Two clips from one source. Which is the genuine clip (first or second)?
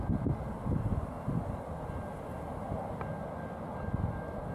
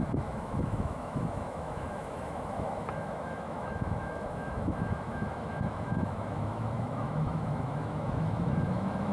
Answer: first